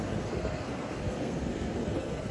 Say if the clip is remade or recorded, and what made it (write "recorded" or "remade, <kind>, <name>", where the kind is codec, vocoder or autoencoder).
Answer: remade, codec, SNAC